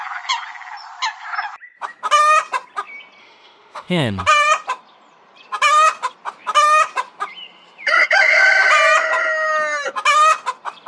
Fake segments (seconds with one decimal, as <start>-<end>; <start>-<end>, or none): 3.2-4.2